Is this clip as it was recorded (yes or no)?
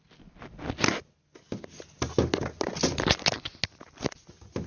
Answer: yes